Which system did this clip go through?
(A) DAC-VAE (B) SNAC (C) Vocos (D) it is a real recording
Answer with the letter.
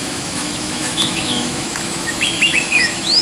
A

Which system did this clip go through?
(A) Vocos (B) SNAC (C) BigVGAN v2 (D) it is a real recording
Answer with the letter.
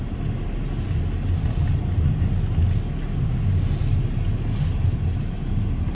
D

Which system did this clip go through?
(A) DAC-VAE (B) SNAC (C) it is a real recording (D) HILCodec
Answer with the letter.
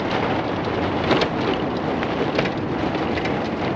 C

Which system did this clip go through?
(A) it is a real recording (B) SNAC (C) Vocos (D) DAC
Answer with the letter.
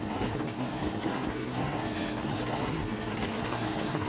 B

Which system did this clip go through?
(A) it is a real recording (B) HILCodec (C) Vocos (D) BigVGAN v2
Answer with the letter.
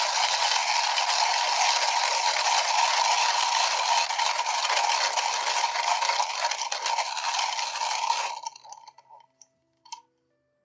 A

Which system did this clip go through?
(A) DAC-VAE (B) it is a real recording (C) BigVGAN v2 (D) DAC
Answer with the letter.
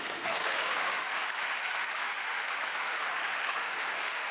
A